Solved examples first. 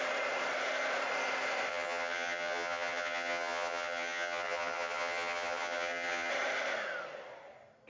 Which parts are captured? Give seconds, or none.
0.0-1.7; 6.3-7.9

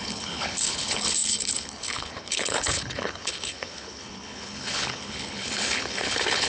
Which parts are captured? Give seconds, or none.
none

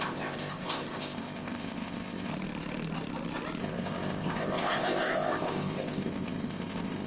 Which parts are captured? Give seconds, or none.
2.3-3.6

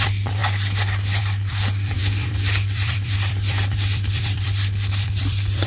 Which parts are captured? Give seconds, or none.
0.4-1.2

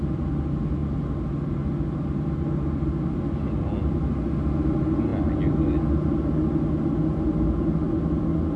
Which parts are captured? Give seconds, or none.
0.0-8.6

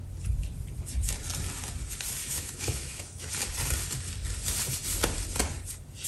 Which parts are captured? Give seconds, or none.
0.0-2.2; 3.3-6.1

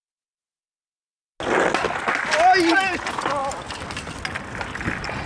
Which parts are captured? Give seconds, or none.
0.0-5.3

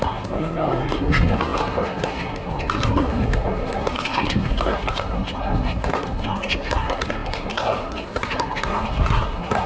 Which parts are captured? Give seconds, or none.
none